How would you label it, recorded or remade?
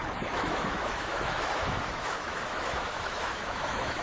remade